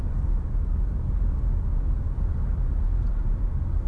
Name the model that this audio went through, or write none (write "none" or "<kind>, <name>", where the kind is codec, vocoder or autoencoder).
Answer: none